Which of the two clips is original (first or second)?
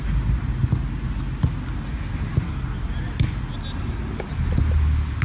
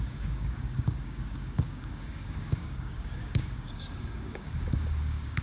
first